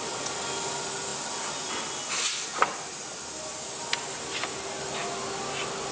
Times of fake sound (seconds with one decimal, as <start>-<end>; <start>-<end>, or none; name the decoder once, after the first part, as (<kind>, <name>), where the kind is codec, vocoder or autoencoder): none